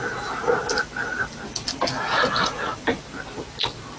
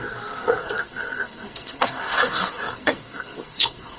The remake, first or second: second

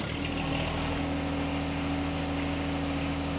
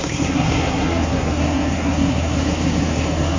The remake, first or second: second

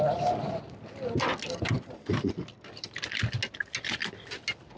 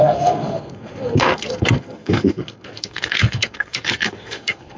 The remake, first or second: second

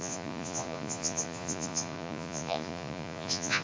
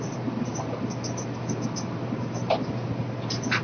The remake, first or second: first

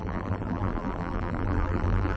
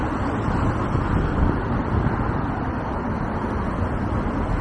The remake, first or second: first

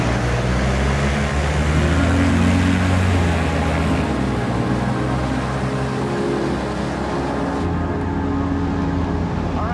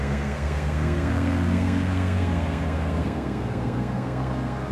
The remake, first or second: second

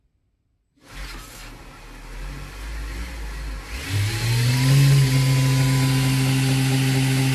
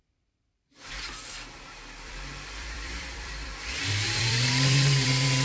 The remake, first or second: second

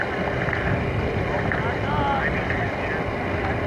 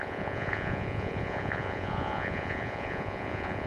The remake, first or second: second